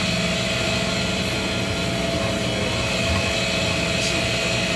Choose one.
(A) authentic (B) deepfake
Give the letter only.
A